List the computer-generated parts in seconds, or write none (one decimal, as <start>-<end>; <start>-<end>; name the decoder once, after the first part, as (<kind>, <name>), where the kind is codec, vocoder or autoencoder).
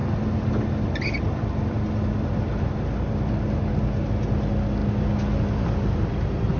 none